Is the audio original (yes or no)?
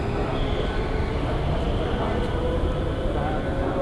yes